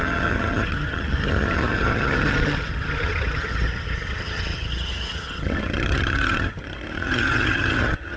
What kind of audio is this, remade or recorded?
remade